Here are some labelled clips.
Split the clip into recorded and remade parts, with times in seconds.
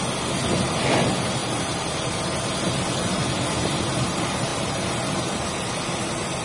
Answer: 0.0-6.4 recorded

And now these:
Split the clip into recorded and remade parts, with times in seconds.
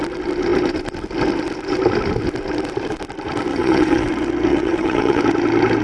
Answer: 0.0-3.5 recorded; 3.5-4.1 remade; 4.1-4.5 recorded; 4.5-5.2 remade; 5.2-5.8 recorded